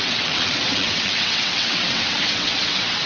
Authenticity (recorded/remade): remade